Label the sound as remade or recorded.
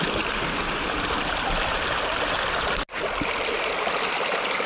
recorded